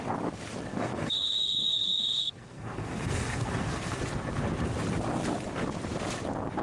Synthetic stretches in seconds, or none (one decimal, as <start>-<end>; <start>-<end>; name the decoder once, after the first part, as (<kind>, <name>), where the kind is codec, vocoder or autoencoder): 0.7-4.0 (codec, SNAC)